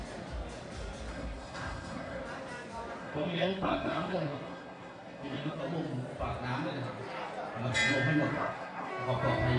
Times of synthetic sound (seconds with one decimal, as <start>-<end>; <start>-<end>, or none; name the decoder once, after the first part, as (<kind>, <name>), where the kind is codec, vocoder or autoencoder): 1.1-2.2 (codec, SNAC); 3.0-5.6; 8.3-8.9